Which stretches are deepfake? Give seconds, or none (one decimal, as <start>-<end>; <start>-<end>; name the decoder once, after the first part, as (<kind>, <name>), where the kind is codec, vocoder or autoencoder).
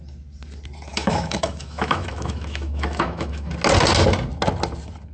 0.9-3.5 (autoencoder, DAC-VAE)